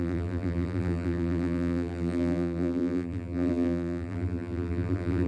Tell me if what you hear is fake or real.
fake